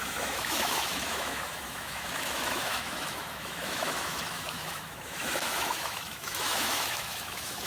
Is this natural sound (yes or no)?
no